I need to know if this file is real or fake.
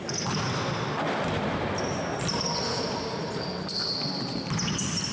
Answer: real